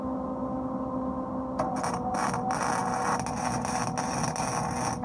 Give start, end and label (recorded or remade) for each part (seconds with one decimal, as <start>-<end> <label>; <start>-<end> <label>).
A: 0.0-5.0 recorded